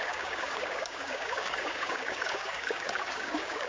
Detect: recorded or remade remade